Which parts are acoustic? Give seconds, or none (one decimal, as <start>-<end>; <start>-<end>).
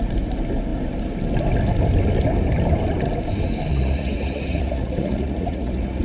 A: 0.0-3.7